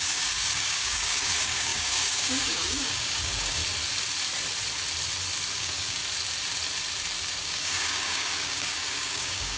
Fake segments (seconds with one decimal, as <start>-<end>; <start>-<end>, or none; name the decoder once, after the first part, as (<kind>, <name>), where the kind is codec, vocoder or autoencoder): 0.0-3.6 (codec, DAC); 5.5-6.0; 7.4-9.6